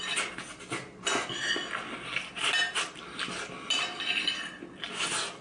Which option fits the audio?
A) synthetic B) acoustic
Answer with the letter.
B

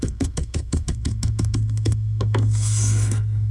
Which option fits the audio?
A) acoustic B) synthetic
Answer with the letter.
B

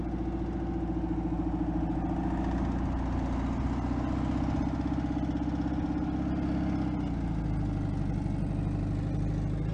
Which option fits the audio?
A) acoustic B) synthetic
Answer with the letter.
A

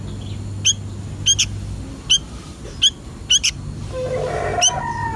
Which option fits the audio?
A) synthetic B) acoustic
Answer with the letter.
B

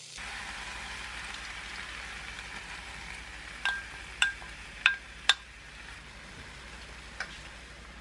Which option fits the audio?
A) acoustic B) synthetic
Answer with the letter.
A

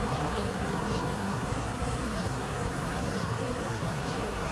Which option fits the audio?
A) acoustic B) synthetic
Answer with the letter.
B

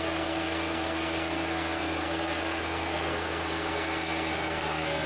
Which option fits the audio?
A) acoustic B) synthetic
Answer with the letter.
B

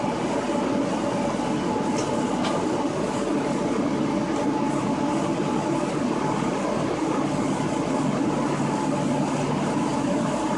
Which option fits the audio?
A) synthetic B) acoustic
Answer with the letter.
B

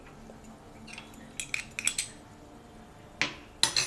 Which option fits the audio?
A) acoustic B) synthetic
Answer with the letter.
A